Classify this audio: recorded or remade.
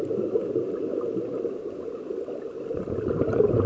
recorded